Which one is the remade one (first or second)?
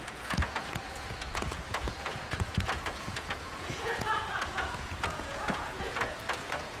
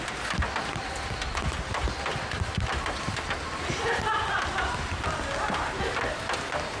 first